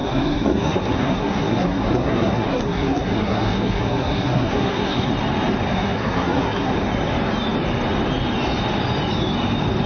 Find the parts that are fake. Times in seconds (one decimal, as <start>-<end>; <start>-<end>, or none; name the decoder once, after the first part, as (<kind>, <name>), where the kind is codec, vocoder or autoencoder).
0.0-5.1 (codec, SNAC); 5.7-6.7